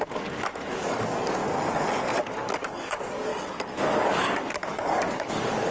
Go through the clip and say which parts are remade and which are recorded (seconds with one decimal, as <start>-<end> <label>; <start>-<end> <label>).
0.0-1.4 remade; 1.4-2.2 recorded; 2.2-3.3 remade; 3.3-4.0 recorded; 4.0-5.7 remade